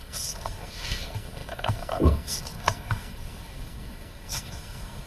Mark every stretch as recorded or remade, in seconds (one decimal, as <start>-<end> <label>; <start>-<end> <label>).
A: 0.0-5.1 remade

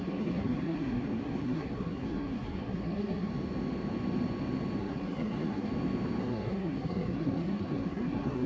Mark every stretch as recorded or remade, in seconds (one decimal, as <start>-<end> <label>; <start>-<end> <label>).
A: 0.0-3.3 remade; 3.3-4.8 recorded; 4.8-5.7 remade; 5.7-6.2 recorded; 6.2-8.5 remade

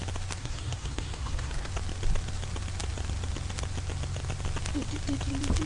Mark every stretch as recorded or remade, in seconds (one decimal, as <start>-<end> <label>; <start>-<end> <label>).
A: 0.0-0.4 recorded; 0.4-1.7 remade; 1.7-5.7 recorded

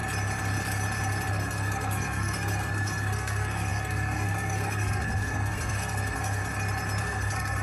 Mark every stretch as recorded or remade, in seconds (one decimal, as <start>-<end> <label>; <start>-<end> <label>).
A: 0.0-1.3 recorded; 1.3-6.4 remade; 6.4-7.0 recorded; 7.0-7.6 remade